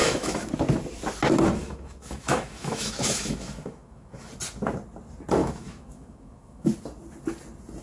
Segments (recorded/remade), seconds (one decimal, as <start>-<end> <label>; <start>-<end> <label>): 0.0-0.5 remade; 0.5-1.6 recorded; 1.6-4.3 remade; 4.3-5.4 recorded; 5.4-6.7 remade; 6.7-7.8 recorded